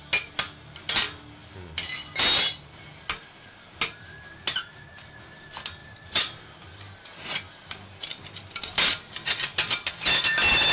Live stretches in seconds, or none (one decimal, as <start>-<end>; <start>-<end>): 0.0-10.7